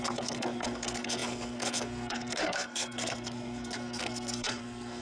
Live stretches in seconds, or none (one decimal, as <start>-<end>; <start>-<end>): none